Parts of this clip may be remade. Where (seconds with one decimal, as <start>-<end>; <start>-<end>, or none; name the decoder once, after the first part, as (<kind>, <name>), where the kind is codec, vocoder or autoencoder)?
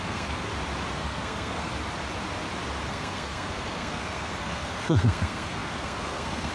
0.0-0.5 (codec, SNAC); 1.0-1.7; 2.9-6.5